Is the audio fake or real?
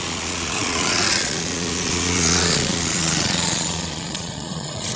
fake